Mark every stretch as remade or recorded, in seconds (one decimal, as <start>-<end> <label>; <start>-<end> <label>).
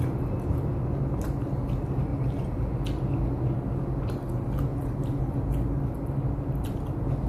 0.0-2.1 recorded; 2.1-2.6 remade; 2.6-4.7 recorded; 4.7-5.3 remade; 5.3-7.3 recorded